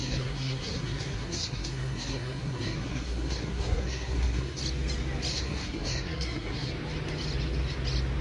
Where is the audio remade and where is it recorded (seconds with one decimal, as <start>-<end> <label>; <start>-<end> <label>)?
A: 0.0-4.6 remade; 4.6-5.3 recorded; 5.3-6.7 remade; 6.7-8.2 recorded